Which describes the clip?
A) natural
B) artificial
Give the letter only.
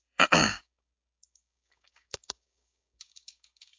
B